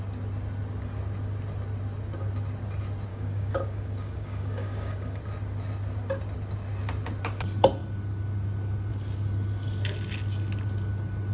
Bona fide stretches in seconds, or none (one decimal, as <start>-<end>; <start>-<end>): 0.0-3.1; 5.2-11.3